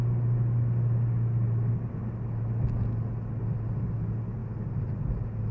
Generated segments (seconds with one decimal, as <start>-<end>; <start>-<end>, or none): none